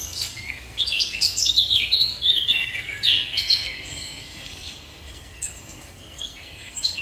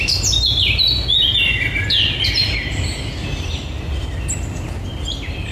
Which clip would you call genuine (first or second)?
second